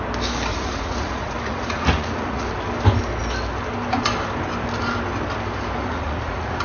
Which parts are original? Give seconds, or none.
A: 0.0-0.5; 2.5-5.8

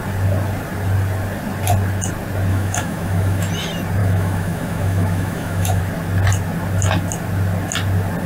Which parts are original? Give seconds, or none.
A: 0.0-2.5; 3.5-4.0; 5.8-8.3